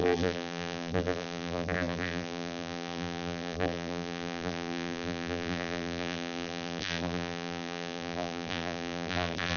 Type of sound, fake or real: fake